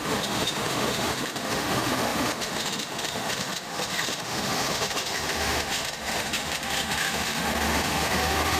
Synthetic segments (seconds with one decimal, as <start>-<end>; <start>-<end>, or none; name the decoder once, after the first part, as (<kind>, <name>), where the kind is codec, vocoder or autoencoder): 0.0-8.6 (autoencoder, DAC-VAE)